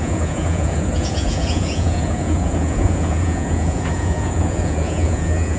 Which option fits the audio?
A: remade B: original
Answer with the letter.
A